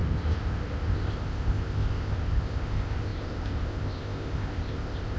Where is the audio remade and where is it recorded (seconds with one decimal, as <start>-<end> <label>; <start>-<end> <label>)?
0.0-5.2 remade